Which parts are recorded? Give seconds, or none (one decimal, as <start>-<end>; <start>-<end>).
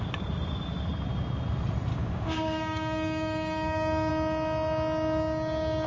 0.0-1.9; 4.1-5.9